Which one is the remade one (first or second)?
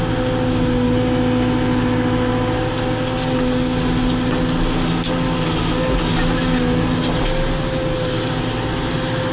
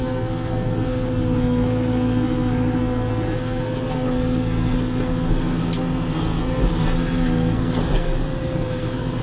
second